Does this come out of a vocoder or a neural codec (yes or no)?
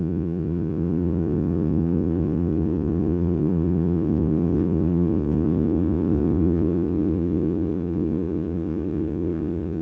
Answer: yes